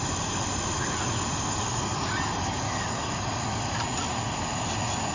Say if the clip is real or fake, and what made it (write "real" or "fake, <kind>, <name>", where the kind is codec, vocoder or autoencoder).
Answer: real